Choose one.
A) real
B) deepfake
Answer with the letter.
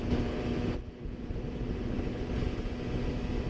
A